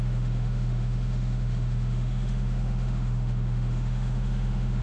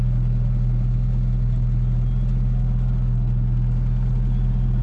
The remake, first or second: first